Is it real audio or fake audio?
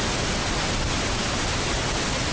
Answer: real